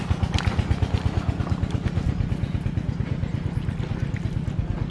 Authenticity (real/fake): real